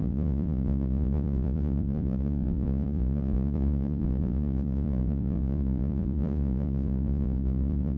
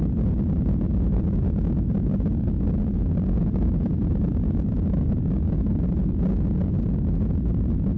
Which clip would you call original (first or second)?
second